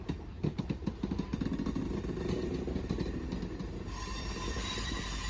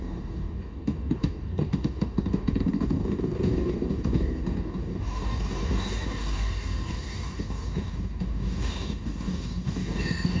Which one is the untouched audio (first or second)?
first